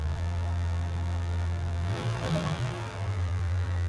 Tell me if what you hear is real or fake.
fake